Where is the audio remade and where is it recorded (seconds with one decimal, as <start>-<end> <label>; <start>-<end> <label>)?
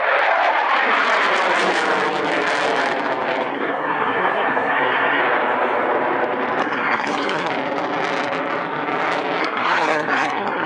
0.0-3.5 recorded; 3.5-5.2 remade; 5.2-6.6 recorded; 6.6-7.5 remade; 7.5-9.4 recorded; 9.4-10.7 remade